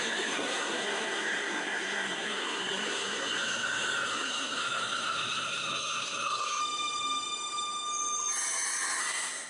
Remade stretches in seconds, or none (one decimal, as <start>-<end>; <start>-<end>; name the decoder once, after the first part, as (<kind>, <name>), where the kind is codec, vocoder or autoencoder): 0.0-6.6 (codec, SNAC); 9.0-9.5